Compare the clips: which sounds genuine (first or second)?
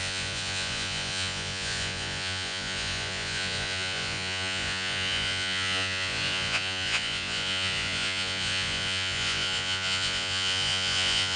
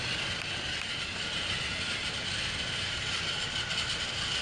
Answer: second